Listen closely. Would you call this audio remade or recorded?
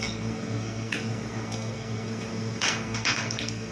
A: remade